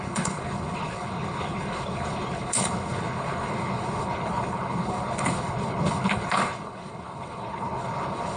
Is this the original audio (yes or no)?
no